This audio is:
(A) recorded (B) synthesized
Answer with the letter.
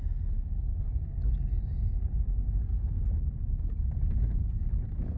A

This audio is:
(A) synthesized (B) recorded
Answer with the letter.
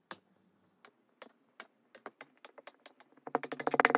B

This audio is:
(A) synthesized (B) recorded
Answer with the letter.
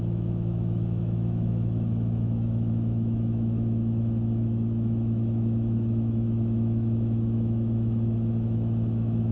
A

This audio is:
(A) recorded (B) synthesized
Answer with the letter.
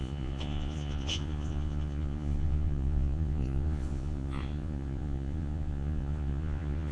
B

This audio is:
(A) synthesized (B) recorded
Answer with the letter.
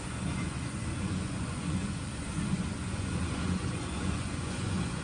A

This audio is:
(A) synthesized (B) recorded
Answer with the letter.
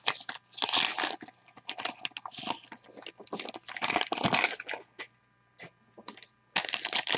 B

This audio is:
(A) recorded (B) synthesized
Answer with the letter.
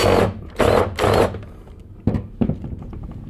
A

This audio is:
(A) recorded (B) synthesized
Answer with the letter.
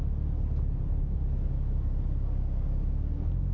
A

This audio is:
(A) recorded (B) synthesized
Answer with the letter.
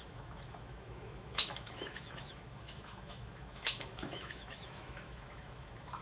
B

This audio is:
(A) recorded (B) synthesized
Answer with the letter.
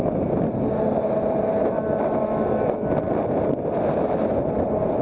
A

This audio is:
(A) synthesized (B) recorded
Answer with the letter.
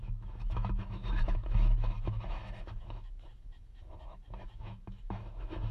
A